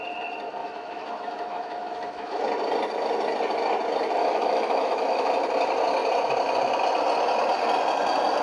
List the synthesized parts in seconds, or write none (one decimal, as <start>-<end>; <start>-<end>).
0.6-2.4; 4.2-5.3